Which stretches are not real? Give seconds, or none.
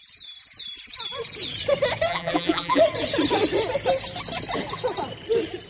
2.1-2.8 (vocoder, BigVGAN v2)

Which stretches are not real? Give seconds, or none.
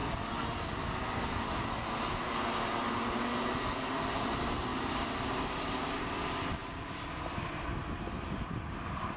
4.7-6.0 (vocoder, BigVGAN v2); 6.6-7.2